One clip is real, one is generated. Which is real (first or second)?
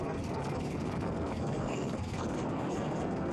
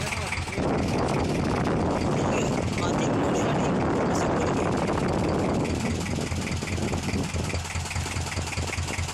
second